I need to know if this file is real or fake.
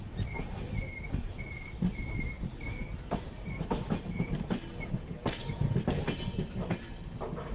real